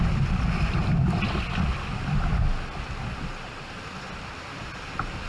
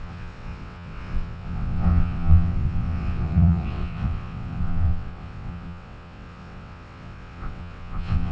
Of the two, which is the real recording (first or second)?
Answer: first